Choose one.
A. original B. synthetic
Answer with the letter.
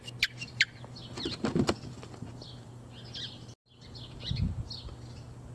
A